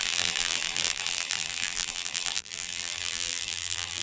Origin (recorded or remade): remade